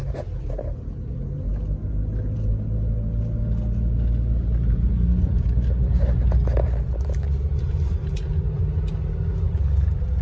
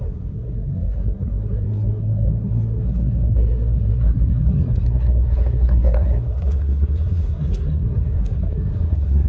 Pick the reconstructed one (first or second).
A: second